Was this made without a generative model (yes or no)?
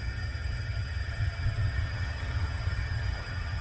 no